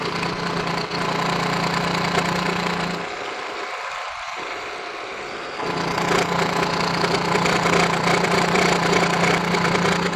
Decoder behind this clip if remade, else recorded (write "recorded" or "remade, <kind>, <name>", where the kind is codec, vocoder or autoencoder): recorded